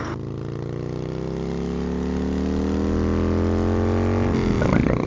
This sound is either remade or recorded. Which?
recorded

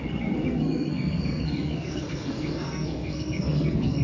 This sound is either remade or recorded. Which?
remade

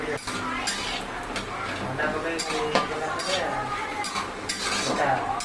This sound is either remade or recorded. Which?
recorded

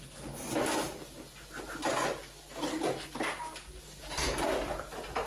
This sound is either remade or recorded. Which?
recorded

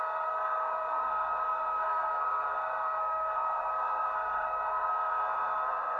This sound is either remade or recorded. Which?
remade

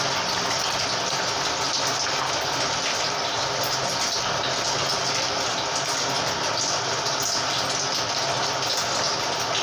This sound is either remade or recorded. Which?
recorded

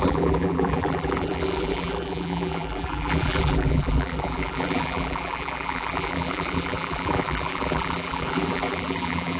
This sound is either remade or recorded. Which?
remade